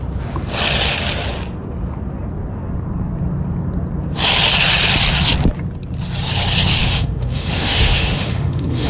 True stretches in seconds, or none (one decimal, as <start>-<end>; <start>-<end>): 0.0-6.8